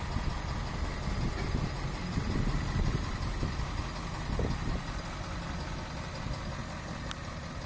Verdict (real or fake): real